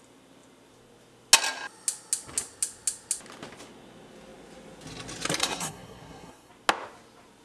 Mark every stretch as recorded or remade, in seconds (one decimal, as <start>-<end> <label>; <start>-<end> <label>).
0.0-5.4 recorded; 5.4-6.5 remade; 6.5-7.4 recorded